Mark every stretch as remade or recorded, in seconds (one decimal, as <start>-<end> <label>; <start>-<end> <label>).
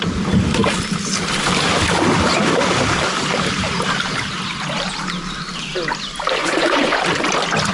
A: 0.0-6.4 recorded; 6.4-7.0 remade; 7.0-7.7 recorded